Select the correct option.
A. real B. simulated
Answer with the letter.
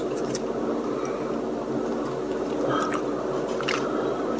A